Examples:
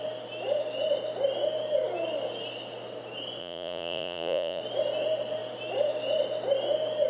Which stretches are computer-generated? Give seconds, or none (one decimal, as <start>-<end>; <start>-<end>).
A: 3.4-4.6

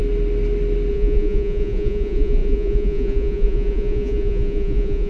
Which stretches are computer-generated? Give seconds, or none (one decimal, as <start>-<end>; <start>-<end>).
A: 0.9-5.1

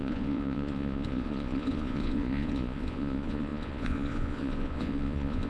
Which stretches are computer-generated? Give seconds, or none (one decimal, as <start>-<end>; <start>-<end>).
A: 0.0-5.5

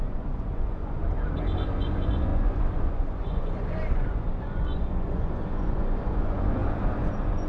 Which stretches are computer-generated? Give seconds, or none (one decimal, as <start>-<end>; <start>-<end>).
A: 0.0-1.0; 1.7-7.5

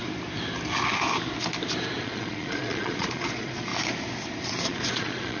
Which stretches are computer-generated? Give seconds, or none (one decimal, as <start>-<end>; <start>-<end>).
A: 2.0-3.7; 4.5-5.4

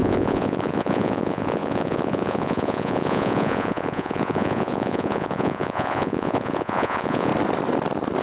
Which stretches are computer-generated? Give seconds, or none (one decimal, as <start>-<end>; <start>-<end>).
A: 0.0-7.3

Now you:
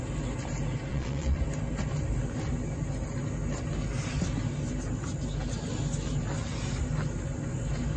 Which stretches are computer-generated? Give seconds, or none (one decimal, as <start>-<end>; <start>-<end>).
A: 0.9-1.4

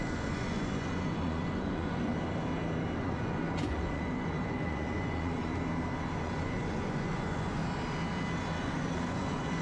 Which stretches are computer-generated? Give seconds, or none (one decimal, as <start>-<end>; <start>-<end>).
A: 0.0-2.1; 3.0-5.5; 6.2-7.6; 8.6-9.6